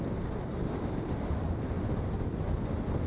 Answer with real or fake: real